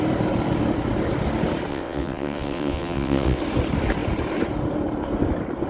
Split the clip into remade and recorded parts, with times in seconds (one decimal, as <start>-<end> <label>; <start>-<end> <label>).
0.0-1.7 recorded; 1.7-3.4 remade; 3.4-5.7 recorded